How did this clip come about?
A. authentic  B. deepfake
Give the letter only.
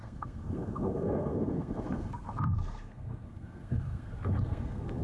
B